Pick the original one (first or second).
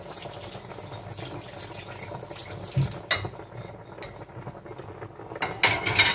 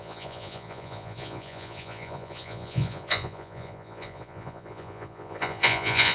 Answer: first